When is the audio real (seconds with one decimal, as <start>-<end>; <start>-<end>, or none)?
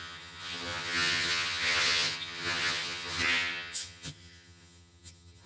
none